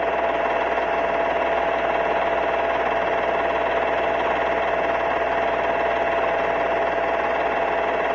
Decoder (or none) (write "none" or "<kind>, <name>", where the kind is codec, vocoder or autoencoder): none